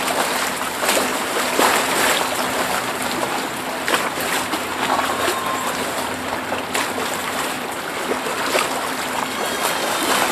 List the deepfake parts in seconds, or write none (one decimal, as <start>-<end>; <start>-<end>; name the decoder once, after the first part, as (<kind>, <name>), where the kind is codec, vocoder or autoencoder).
1.1-1.9 (vocoder, BigVGAN v2); 3.0-6.4; 7.2-7.8